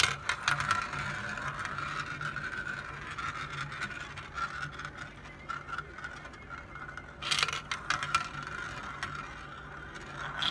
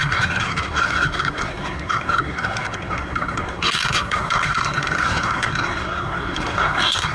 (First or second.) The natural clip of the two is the first